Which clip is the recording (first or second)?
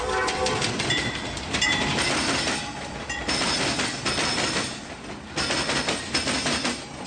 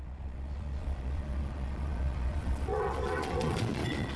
first